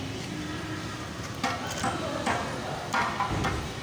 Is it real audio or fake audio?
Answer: real